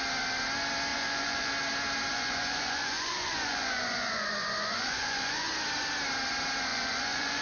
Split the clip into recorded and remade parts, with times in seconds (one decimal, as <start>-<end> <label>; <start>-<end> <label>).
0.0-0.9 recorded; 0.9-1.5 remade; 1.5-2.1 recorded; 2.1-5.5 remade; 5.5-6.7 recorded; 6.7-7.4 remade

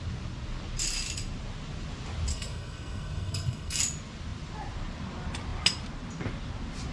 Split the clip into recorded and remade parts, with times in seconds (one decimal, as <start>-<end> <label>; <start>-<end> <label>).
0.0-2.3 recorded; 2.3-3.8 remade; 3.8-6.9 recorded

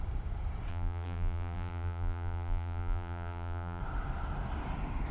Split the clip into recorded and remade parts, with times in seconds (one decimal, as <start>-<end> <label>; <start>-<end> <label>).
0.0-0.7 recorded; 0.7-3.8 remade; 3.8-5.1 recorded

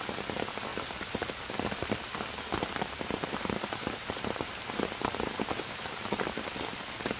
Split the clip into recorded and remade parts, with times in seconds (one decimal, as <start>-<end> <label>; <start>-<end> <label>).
0.0-0.7 recorded; 0.7-1.9 remade; 1.9-2.5 recorded; 2.5-5.9 remade; 5.9-7.2 recorded

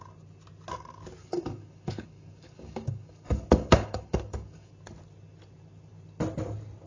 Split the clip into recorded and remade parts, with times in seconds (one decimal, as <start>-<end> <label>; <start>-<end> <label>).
0.0-1.2 recorded; 1.2-4.7 remade; 4.7-6.9 recorded

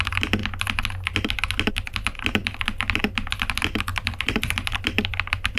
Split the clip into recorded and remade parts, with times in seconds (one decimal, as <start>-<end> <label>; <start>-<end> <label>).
0.0-3.9 recorded; 3.9-5.6 remade